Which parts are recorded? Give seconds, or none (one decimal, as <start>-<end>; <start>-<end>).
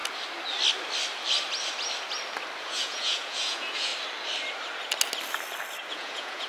0.0-2.6; 3.9-5.9